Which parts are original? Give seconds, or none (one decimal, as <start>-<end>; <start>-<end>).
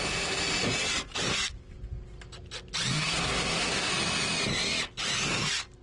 0.0-2.9; 3.9-5.8